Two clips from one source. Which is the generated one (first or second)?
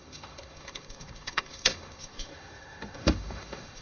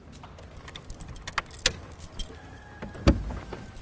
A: first